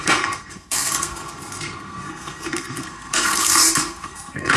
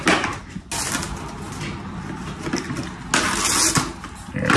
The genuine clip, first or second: second